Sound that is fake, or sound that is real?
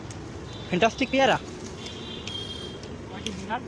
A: real